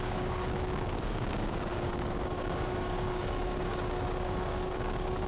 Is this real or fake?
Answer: fake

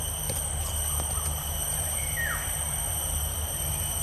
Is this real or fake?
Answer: real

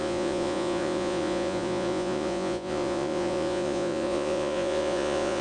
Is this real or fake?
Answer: fake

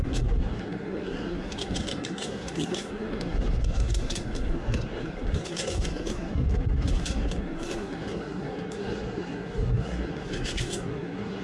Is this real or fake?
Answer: fake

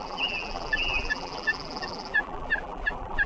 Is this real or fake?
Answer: fake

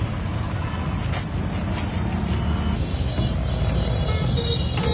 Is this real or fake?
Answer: real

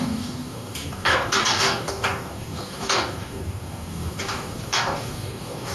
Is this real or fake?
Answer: fake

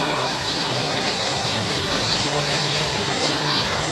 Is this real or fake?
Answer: fake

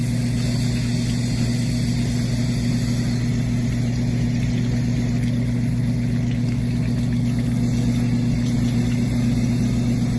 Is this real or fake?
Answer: real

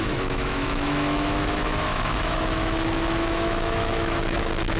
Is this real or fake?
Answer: fake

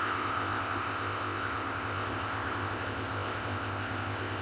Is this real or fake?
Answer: fake